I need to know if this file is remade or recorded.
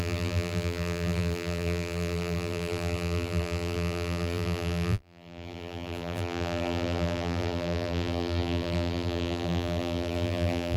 remade